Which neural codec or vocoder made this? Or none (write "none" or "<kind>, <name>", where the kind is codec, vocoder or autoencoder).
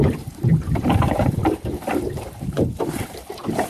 vocoder, BigVGAN v2